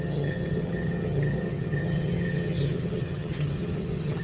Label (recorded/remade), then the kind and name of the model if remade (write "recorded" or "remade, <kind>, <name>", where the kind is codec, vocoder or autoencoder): remade, vocoder, HiFi-GAN